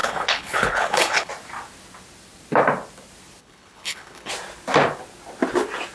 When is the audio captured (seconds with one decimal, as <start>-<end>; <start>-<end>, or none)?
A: 1.3-3.4; 4.3-5.9